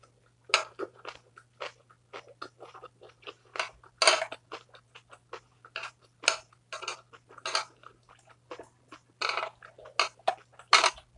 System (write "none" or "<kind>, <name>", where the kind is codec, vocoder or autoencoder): none